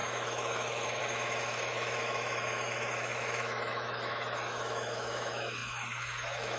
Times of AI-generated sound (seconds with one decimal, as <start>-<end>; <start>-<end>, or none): 0.0-6.6